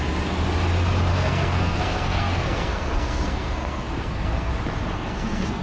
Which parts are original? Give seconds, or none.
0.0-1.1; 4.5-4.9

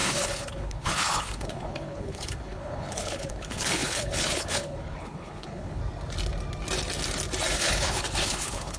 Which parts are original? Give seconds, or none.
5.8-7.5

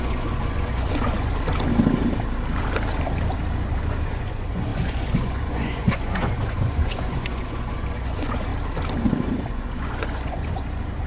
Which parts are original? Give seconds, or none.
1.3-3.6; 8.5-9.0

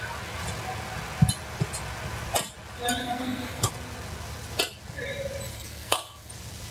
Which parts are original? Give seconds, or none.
0.0-3.0; 3.7-5.5; 6.3-6.7